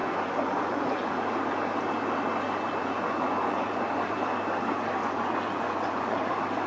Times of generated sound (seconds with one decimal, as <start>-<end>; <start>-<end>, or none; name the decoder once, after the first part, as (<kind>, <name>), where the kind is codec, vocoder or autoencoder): 0.0-1.1 (vocoder, Vocos); 2.8-4.2; 5.0-6.3